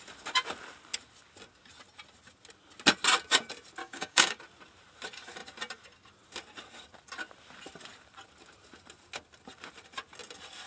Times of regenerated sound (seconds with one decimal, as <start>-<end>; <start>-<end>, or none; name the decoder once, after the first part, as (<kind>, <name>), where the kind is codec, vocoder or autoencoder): 3.8-4.4 (codec, DAC)